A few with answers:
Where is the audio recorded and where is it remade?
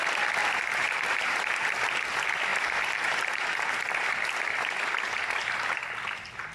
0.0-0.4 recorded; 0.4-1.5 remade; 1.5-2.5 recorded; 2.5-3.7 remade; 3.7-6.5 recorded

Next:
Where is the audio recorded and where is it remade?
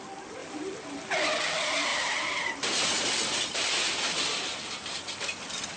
0.0-0.4 recorded; 0.4-1.1 remade; 1.1-1.9 recorded; 1.9-5.8 remade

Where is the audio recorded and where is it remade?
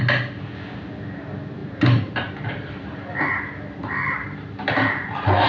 0.0-1.6 recorded; 1.6-3.3 remade; 3.3-3.8 recorded; 3.8-5.1 remade; 5.1-5.5 recorded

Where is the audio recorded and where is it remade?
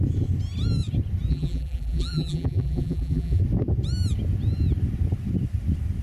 0.0-1.3 recorded; 1.3-3.4 remade; 3.4-6.0 recorded